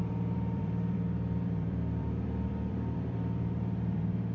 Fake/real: fake